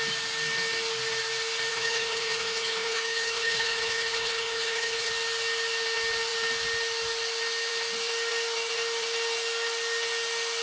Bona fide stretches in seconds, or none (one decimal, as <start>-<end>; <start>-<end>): 0.0-1.7; 5.1-10.6